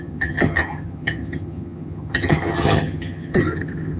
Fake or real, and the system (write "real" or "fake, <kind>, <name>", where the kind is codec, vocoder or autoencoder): fake, vocoder, HiFi-GAN